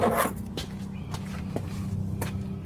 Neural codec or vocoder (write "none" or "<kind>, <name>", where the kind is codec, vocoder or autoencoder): none